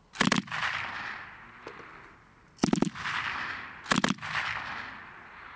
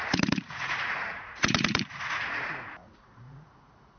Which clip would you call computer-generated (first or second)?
second